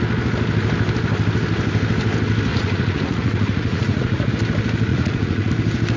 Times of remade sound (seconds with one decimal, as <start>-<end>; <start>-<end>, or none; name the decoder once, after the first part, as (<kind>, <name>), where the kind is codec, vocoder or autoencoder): 2.5-4.3 (vocoder, Vocos); 4.9-5.5